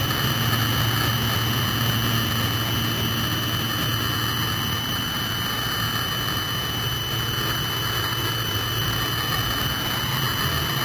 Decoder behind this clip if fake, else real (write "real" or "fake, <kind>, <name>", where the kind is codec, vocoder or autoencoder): real